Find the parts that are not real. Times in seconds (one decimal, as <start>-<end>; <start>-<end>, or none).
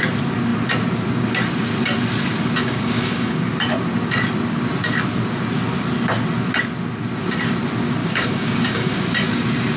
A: 2.6-3.5; 8.0-9.0